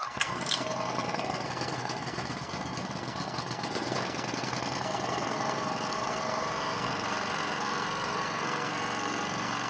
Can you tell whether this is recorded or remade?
remade